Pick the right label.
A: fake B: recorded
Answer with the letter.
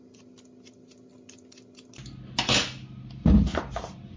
B